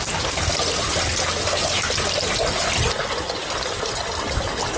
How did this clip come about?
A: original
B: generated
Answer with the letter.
A